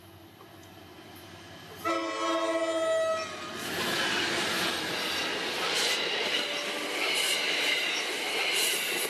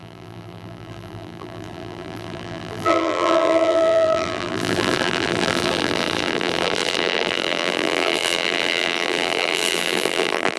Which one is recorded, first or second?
first